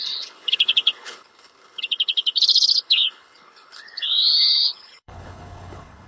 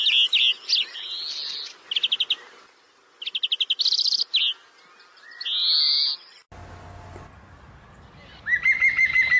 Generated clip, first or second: first